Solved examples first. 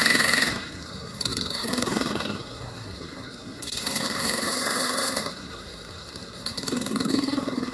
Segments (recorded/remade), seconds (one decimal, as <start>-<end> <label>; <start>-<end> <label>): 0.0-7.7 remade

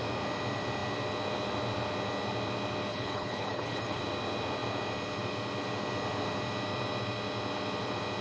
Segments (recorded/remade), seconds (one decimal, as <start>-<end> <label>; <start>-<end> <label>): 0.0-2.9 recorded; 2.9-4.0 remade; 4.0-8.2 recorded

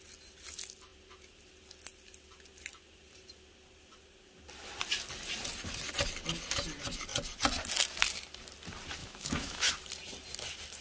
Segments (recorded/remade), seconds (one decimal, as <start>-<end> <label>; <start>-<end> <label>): 0.0-9.0 recorded; 9.0-9.7 remade; 9.7-10.8 recorded

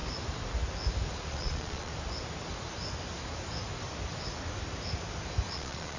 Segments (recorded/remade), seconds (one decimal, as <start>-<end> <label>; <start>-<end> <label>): 0.0-1.3 recorded; 1.3-1.9 remade; 1.9-5.5 recorded; 5.5-6.0 remade

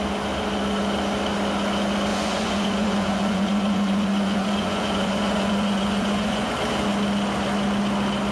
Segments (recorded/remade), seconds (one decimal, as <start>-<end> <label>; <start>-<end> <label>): 0.0-2.1 recorded; 2.1-6.5 remade; 6.5-8.3 recorded

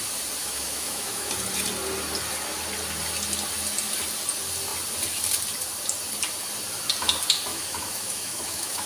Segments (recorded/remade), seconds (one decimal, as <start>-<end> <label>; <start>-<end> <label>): 0.0-0.4 recorded; 0.4-1.3 remade; 1.3-7.5 recorded; 7.5-8.9 remade

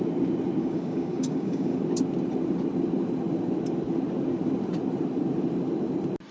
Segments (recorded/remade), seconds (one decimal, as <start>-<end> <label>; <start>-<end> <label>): 0.0-0.6 recorded; 0.6-1.8 remade; 1.8-6.3 recorded